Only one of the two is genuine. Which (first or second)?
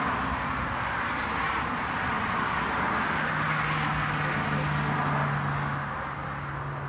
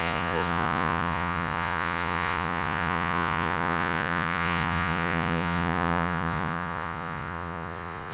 first